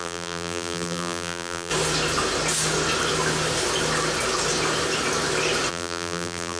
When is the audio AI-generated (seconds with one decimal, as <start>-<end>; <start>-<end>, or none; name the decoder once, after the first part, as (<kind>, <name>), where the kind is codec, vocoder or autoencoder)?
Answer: 0.0-1.7 (vocoder, BigVGAN v2); 5.7-6.6